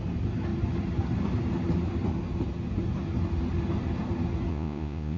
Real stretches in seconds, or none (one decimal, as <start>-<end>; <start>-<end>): 0.0-4.5

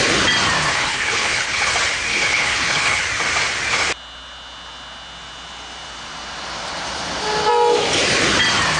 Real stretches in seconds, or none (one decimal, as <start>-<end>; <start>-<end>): 0.0-0.7; 1.7-2.1; 3.0-8.8

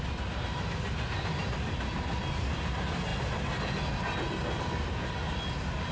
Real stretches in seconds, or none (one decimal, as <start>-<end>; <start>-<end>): 0.0-5.9

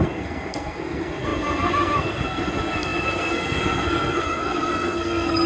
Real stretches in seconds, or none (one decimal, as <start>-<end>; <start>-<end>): none

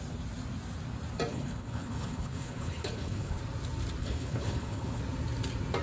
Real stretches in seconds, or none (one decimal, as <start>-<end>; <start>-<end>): 0.0-1.3; 3.4-4.0; 5.0-5.8

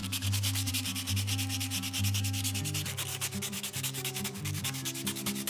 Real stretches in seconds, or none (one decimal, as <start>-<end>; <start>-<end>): 0.7-3.1

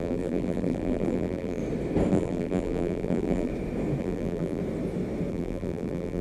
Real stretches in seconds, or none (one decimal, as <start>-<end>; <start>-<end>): 1.6-2.1; 3.5-4.0; 4.6-5.3